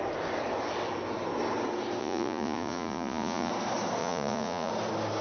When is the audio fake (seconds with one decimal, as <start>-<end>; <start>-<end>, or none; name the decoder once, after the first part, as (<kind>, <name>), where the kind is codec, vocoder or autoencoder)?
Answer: 2.0-3.5 (vocoder, Vocos); 4.0-4.7